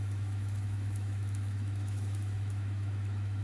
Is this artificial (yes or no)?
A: yes